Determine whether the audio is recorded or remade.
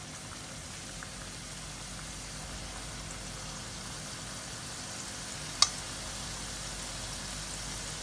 recorded